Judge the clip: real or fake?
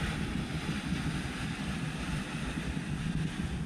real